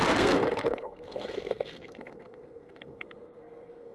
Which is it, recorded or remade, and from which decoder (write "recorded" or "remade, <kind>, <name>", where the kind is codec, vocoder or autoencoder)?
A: remade, codec, SNAC